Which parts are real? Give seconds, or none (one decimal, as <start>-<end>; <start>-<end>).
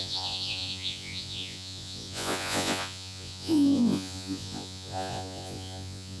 none